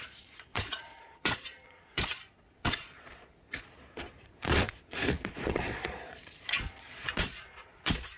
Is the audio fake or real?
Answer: fake